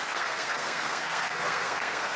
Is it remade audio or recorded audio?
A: remade